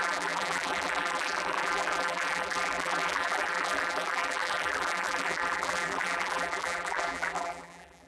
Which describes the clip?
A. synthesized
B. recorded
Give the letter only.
A